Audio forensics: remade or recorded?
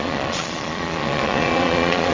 remade